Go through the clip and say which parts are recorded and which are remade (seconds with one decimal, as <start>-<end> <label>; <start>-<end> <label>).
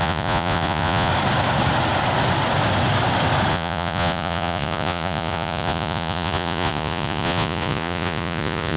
0.0-1.1 remade; 1.1-3.5 recorded; 3.5-8.8 remade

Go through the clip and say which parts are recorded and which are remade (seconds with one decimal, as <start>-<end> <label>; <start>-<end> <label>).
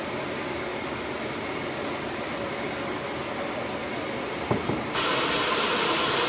0.0-0.7 recorded; 0.7-1.4 remade; 1.4-3.8 recorded; 3.8-4.8 remade; 4.8-6.3 recorded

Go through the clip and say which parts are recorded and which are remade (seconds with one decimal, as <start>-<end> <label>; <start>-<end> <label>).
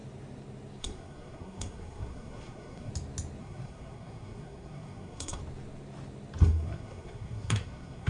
0.0-0.8 recorded; 0.8-2.9 remade; 2.9-3.4 recorded; 3.4-5.4 remade; 5.4-6.4 recorded; 6.4-8.1 remade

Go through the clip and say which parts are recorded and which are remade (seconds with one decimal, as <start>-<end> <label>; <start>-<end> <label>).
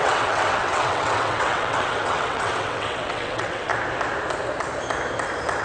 0.0-3.7 remade; 3.7-5.6 recorded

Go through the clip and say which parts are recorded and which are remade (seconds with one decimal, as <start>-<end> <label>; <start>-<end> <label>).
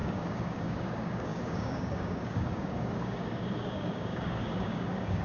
0.0-5.2 remade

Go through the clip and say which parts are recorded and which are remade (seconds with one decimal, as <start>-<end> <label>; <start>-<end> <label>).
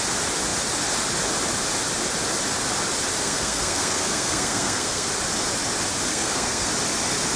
0.0-3.2 recorded; 3.2-5.1 remade; 5.1-6.1 recorded; 6.1-6.7 remade; 6.7-7.4 recorded